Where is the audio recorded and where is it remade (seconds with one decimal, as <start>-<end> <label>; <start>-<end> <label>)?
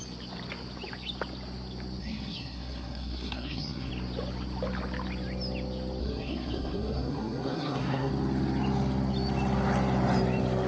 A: 0.0-2.0 recorded; 2.0-3.9 remade; 3.9-6.0 recorded; 6.0-8.1 remade; 8.1-10.7 recorded